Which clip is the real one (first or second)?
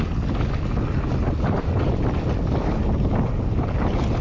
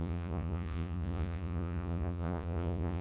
first